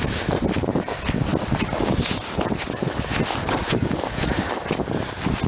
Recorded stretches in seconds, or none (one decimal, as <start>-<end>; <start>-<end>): 0.0-3.4; 4.5-5.5